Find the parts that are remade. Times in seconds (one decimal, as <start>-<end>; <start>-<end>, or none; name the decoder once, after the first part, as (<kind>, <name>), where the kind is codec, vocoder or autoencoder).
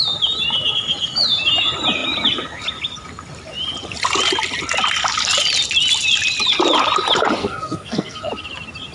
7.4-8.3 (codec, SNAC)